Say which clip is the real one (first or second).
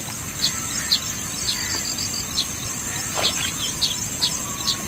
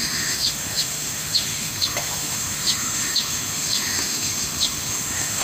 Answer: first